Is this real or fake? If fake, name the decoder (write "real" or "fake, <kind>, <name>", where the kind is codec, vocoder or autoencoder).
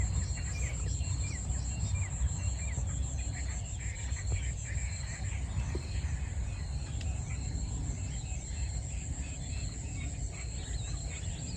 real